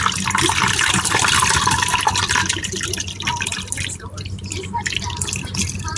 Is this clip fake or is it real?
real